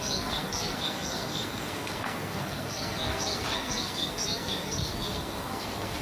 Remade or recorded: remade